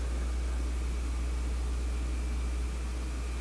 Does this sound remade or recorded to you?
recorded